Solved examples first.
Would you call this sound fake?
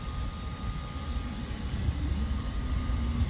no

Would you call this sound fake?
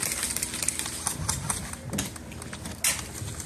no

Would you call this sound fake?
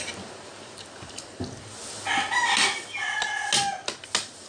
no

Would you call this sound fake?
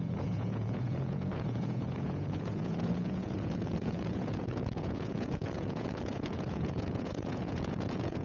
yes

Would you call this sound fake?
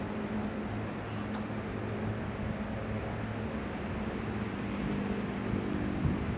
no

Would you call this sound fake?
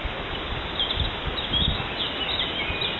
no